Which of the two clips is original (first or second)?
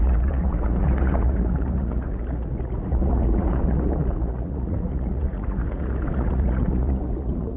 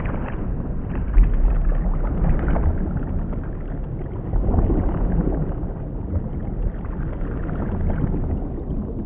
second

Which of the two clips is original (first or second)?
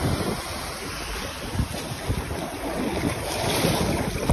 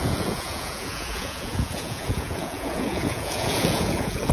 first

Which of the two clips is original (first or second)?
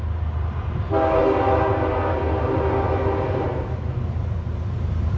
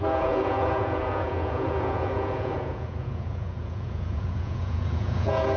first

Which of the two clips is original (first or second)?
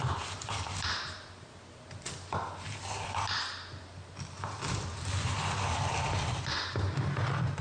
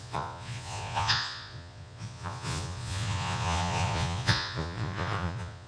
first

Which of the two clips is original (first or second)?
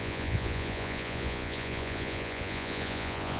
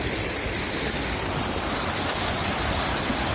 second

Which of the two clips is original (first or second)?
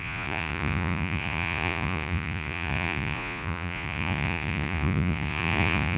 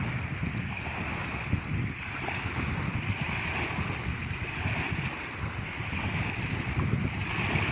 second